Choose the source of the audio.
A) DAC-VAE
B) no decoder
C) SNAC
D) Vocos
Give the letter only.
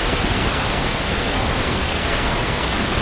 C